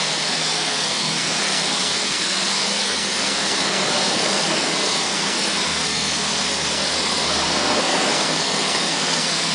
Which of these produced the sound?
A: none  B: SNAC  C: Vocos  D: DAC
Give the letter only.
B